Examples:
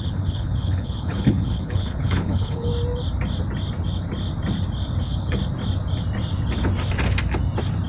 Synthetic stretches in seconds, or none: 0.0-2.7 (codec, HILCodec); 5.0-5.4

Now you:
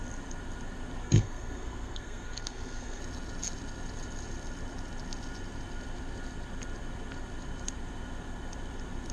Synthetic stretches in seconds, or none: 1.0-3.0 (codec, SNAC)

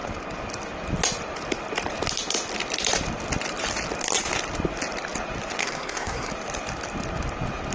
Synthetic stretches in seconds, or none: 5.6-6.3 (codec, SNAC)

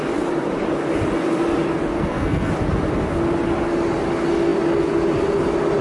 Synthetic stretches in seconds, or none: 1.9-2.5 (codec, SNAC)

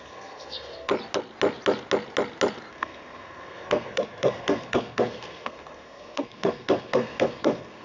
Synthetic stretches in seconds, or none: 0.0-0.9 (codec, SNAC); 2.7-7.8